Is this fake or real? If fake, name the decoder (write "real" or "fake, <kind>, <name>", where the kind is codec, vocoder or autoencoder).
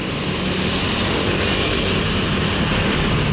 real